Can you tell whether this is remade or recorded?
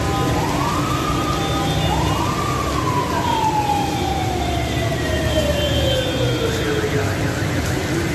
recorded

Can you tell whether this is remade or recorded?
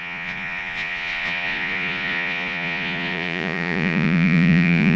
remade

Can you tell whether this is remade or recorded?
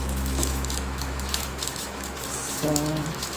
remade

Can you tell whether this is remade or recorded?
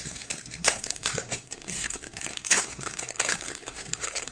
remade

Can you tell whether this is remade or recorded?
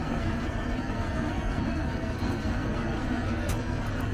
remade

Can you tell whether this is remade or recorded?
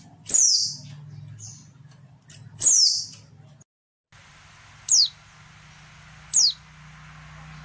recorded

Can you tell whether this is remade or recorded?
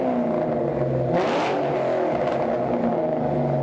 recorded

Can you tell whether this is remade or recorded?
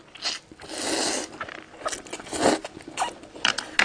recorded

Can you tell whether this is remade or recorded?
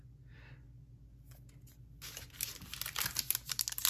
recorded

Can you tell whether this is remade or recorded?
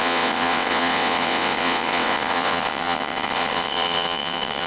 remade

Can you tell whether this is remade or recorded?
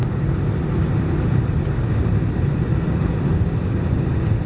recorded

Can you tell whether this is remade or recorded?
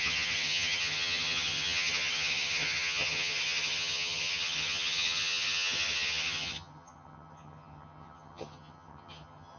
remade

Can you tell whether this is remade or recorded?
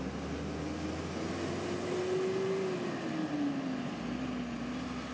recorded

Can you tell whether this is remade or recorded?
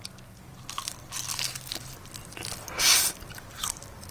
recorded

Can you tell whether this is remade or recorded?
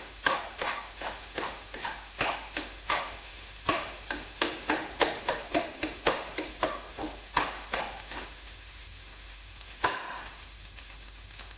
remade